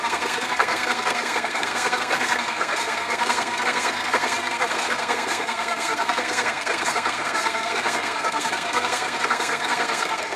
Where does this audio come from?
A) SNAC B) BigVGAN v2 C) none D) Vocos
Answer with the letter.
A